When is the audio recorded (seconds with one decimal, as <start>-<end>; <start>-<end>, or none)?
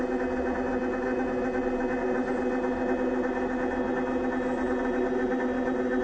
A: 0.0-6.0